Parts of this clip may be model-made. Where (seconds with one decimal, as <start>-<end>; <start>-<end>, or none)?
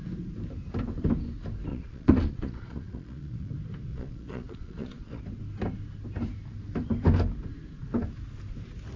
1.7-3.5; 3.9-5.2